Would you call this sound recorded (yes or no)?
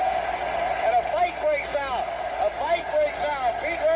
yes